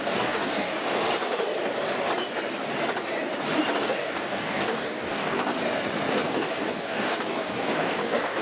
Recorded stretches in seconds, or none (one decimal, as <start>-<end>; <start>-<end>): 1.0-3.8; 5.5-6.1